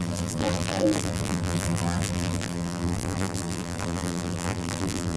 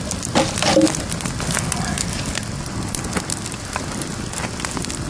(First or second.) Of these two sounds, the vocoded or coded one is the first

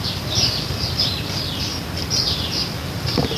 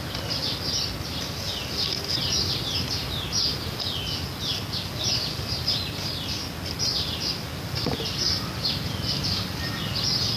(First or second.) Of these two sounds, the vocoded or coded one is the first